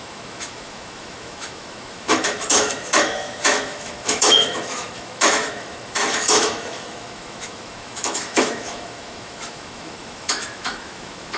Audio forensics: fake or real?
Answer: fake